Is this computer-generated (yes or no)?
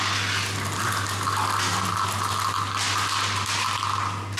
no